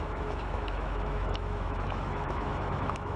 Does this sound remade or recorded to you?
remade